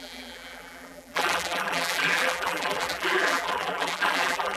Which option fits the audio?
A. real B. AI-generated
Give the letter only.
B